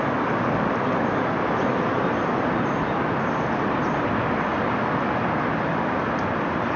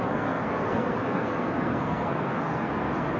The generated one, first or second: second